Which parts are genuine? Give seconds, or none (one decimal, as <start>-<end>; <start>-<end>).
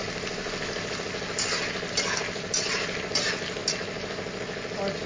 0.0-5.1